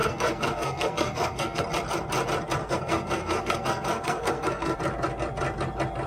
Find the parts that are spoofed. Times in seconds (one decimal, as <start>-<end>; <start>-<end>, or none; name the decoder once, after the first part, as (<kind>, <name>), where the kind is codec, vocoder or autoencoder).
0.0-1.6 (codec, SNAC); 2.6-4.8